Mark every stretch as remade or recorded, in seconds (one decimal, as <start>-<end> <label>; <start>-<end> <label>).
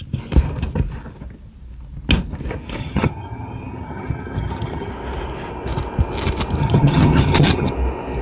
0.0-2.8 recorded; 2.8-4.9 remade; 4.9-6.6 recorded; 6.6-7.7 remade; 7.7-8.2 recorded